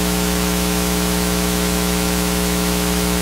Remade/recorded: remade